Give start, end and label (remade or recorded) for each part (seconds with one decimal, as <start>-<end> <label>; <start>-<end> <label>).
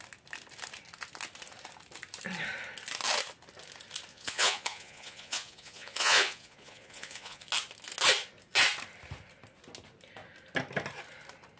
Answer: 0.0-4.1 recorded; 4.1-7.5 remade; 7.5-11.6 recorded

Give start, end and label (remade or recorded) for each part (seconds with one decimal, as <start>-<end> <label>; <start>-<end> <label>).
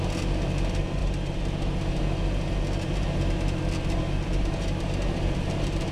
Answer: 0.0-5.9 recorded